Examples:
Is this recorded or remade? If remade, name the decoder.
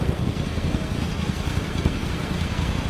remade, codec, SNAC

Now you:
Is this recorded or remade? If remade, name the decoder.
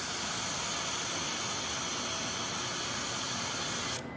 recorded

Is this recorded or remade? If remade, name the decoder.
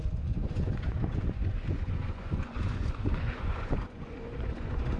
remade, vocoder, Vocos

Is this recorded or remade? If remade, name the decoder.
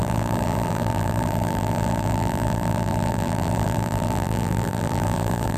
remade, vocoder, BigVGAN v2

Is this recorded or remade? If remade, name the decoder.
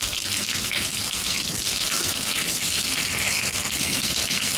remade, codec, SNAC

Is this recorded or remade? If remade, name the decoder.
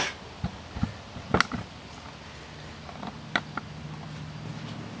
recorded